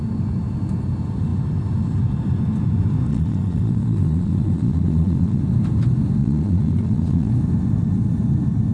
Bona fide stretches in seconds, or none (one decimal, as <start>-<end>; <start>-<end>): 0.0-3.1; 5.4-6.2; 7.3-8.7